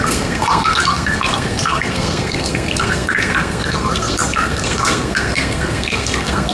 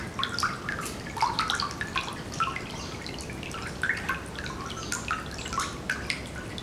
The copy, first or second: first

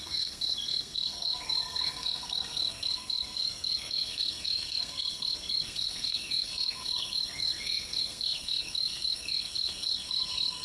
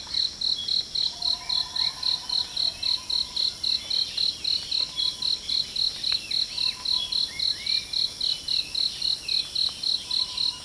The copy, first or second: first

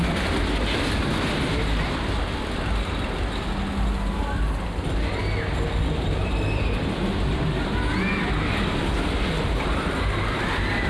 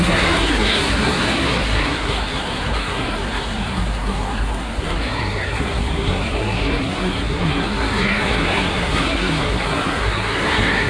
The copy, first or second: second